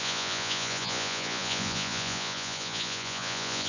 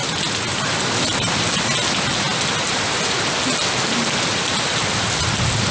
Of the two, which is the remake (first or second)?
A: first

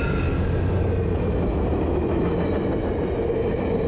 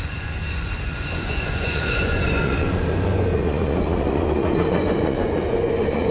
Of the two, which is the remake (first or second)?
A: second